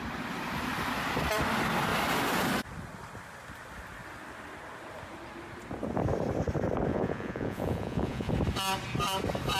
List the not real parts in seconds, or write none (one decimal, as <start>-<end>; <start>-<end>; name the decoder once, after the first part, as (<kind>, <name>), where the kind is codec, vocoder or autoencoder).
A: 6.9-8.3 (vocoder, Vocos)